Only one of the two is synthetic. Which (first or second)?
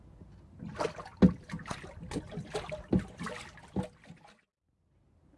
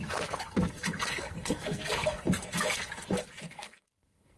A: second